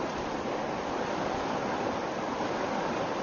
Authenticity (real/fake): real